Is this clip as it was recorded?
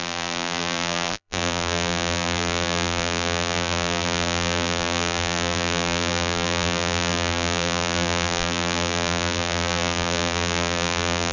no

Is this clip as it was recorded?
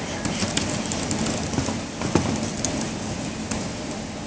yes